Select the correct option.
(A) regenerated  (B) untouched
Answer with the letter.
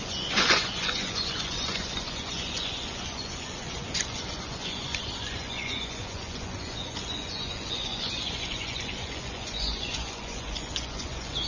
A